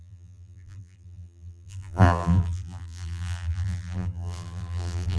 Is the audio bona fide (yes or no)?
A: no